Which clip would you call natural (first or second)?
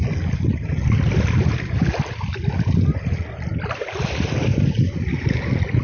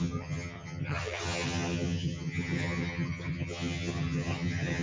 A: first